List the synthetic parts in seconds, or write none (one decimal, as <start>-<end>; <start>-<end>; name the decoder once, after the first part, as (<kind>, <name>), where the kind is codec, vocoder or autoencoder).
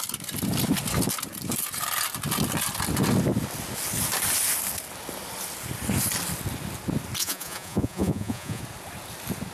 7.2-8.6 (vocoder, Vocos)